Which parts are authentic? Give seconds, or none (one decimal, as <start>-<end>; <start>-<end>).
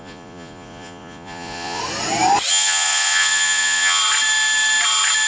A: 1.8-2.5; 4.0-5.3